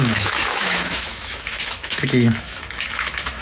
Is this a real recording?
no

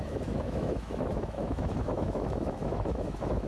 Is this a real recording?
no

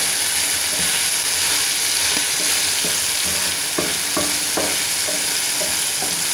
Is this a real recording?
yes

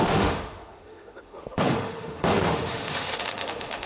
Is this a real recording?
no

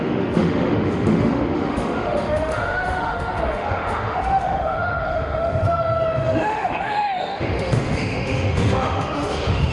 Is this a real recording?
no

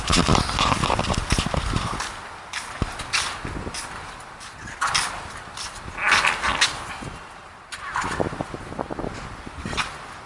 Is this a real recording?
yes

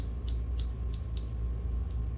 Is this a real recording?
yes